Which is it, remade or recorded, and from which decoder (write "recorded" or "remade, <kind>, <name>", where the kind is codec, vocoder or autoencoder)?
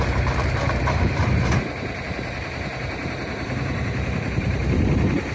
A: remade, vocoder, BigVGAN v2